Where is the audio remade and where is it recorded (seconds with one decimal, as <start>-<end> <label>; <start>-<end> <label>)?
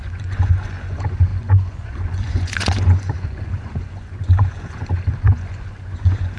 0.0-6.4 remade